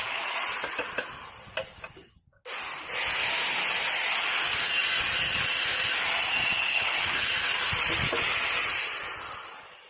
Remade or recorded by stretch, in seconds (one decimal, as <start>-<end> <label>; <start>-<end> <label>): 0.0-6.7 recorded; 6.7-7.3 remade; 7.3-9.9 recorded